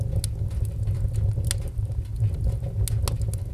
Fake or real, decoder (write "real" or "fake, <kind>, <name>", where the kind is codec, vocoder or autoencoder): real